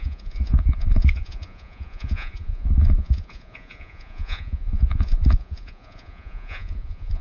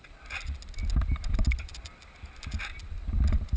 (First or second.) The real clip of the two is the second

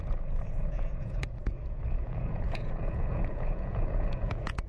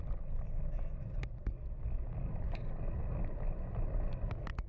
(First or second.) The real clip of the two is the second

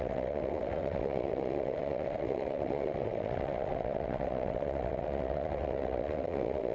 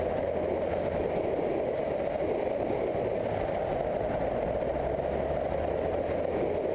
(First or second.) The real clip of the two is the second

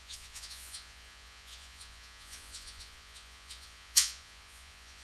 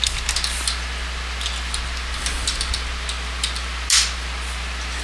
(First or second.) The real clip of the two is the second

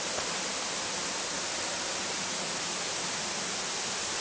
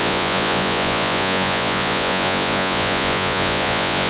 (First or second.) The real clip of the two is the first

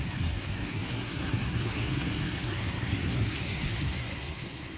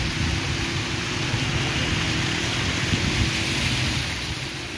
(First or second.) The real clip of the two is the second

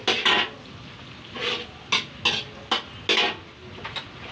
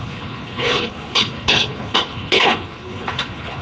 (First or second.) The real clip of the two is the first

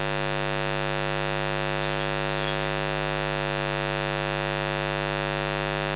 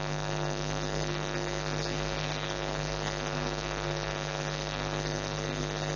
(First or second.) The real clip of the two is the first